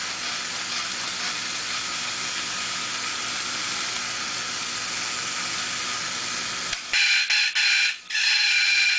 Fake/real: real